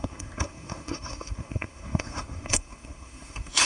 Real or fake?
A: fake